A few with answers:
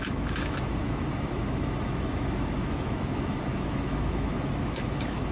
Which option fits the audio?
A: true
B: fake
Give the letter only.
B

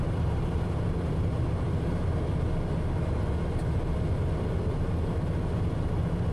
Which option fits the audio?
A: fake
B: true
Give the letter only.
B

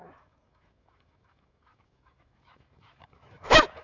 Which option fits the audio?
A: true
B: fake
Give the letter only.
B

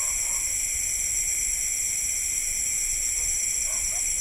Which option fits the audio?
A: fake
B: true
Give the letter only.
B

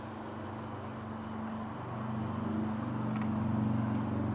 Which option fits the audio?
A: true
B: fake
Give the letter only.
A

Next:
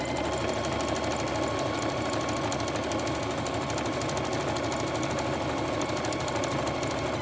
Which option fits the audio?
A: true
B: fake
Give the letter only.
A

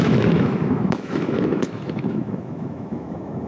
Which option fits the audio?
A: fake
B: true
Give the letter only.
A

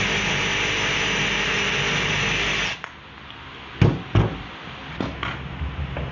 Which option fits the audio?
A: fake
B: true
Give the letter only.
B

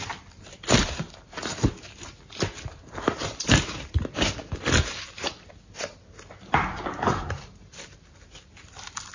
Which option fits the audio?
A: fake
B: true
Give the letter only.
B